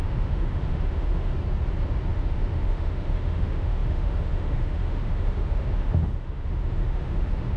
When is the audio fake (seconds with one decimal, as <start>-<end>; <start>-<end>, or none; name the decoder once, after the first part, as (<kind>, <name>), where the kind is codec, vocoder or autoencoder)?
0.0-1.3 (autoencoder, DAC-VAE); 2.1-7.6